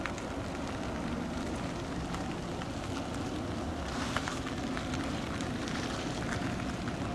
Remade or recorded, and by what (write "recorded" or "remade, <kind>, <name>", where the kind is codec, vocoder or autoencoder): recorded